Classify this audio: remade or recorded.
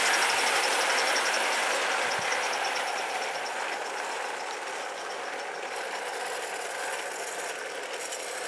recorded